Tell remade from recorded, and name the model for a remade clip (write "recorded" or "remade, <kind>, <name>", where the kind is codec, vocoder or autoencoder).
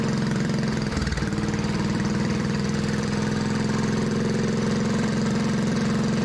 remade, vocoder, BigVGAN v2